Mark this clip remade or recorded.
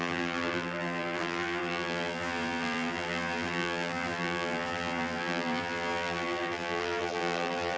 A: remade